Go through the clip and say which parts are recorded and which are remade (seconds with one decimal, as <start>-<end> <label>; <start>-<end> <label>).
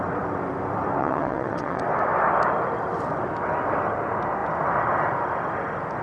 0.0-1.0 recorded; 1.0-1.8 remade; 1.8-6.0 recorded